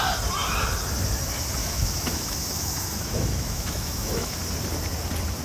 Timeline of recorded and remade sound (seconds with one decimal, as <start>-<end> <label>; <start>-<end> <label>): 0.0-1.6 recorded; 1.6-4.4 remade; 4.4-5.4 recorded